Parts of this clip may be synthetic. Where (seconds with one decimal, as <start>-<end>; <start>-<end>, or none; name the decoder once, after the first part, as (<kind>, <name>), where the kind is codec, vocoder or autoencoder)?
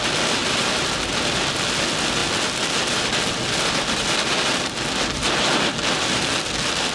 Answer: none